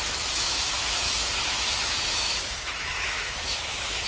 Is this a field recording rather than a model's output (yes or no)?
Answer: no